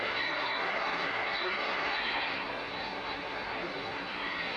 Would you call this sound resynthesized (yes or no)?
yes